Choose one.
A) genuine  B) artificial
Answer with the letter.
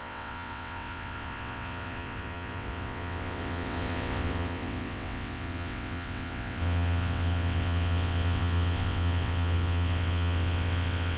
B